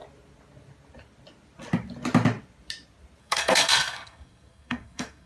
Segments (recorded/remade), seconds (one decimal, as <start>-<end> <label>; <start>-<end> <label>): 0.0-3.2 recorded; 3.2-5.3 remade